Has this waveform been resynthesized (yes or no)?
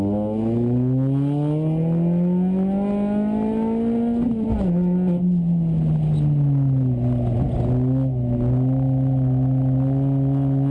no